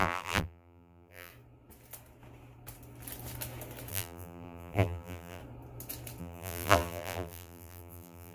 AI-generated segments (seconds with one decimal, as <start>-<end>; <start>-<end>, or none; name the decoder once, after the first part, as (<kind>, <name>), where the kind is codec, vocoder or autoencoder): 0.0-1.3 (vocoder, BigVGAN v2); 3.9-5.4; 6.2-8.3